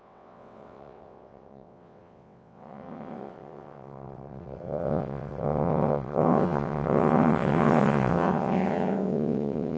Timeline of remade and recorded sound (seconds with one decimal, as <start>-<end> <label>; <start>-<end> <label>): 0.0-9.8 remade